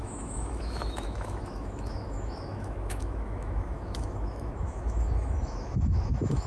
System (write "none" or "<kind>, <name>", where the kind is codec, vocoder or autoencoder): autoencoder, DAC-VAE